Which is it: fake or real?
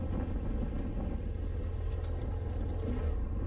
real